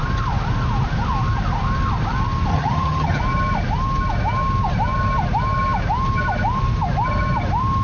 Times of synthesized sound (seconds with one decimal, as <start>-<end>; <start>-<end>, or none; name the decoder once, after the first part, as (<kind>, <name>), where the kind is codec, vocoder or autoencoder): 2.5-3.2 (vocoder, HiFi-GAN)